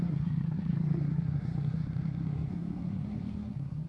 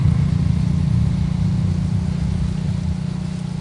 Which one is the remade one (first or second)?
first